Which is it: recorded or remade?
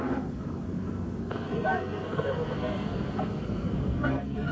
remade